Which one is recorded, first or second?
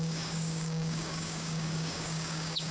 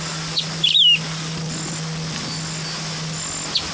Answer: second